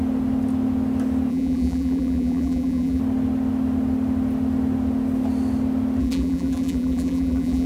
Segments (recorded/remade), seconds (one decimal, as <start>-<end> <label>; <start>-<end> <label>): 0.0-1.3 recorded; 1.3-3.0 remade; 3.0-6.0 recorded; 6.0-7.7 remade